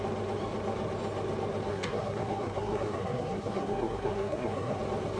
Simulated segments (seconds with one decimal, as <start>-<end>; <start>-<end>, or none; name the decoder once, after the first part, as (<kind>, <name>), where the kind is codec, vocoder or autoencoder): 1.7-4.8 (codec, SNAC)